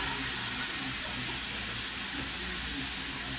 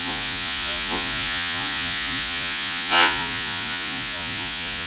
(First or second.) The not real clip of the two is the second